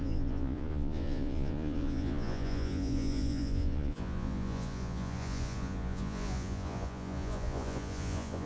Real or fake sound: fake